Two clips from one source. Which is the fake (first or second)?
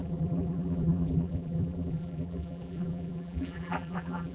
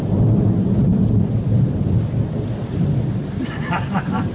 first